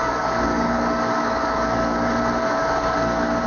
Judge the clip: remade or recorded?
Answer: remade